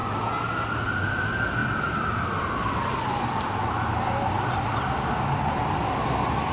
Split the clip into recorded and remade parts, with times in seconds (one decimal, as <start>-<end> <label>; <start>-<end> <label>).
0.0-6.5 recorded